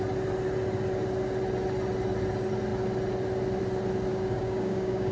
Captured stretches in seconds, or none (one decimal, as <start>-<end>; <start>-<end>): 0.0-4.1